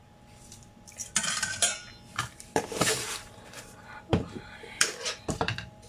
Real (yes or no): no